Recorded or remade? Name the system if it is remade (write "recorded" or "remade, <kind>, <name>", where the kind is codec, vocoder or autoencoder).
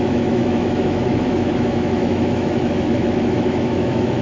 remade, autoencoder, DAC-VAE